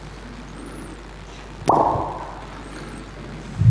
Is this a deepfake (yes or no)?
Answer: no